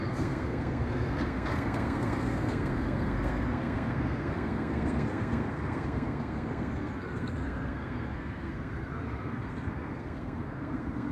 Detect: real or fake fake